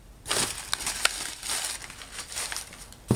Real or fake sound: real